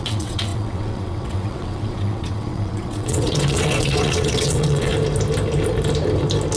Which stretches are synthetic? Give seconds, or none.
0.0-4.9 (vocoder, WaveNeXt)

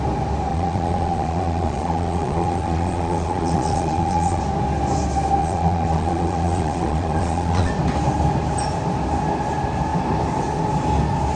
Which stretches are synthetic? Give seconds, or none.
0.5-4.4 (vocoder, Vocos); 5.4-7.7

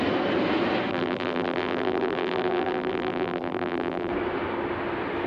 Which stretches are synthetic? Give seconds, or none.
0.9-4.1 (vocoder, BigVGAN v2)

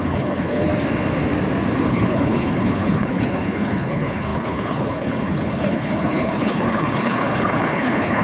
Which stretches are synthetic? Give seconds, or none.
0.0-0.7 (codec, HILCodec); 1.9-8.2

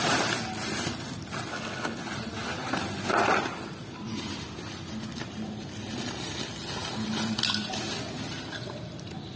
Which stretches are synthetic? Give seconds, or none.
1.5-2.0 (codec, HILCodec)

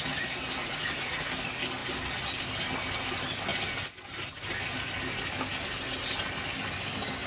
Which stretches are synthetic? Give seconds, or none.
0.6-1.3 (vocoder, Vocos)

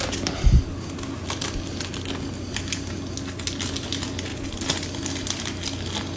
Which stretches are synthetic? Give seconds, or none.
none